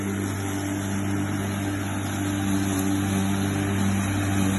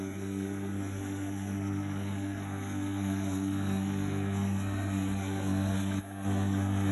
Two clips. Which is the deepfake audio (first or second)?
second